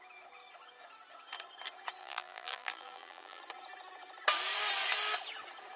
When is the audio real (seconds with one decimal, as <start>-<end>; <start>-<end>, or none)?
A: 0.0-2.0; 3.4-5.8